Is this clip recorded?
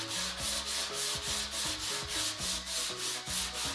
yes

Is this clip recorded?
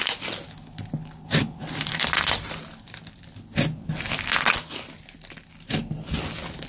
yes